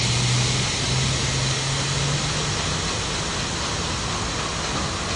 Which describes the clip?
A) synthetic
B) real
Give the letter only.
B